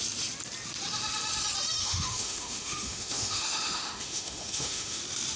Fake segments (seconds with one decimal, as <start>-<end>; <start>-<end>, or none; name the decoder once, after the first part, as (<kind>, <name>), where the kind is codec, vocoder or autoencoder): 1.8-5.0 (autoencoder, DAC-VAE)